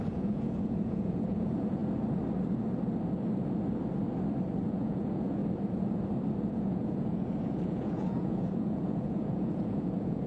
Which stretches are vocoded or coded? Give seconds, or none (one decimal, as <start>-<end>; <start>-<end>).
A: 0.0-1.8; 4.7-5.4; 6.5-10.3